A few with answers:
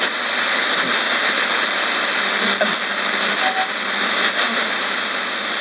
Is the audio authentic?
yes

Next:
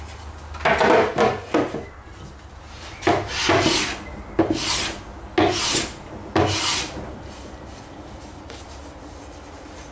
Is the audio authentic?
yes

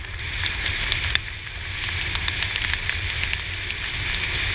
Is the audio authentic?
yes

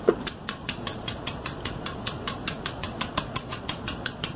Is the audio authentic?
no